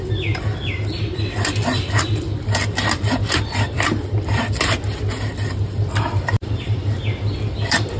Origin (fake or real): fake